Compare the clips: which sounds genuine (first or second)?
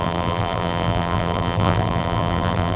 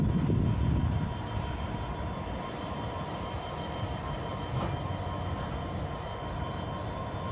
second